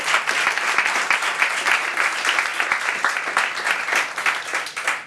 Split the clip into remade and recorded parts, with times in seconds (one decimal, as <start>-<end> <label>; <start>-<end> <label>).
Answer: 0.0-5.1 recorded